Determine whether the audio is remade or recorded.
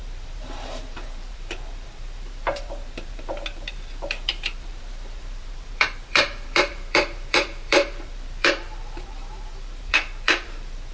remade